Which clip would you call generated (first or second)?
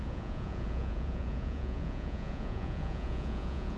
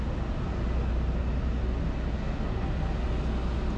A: first